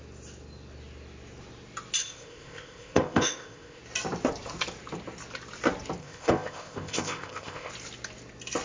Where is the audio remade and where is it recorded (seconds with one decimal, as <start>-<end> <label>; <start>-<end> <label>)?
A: 0.0-2.0 recorded; 2.0-3.8 remade; 3.8-6.0 recorded; 6.0-7.7 remade; 7.7-8.6 recorded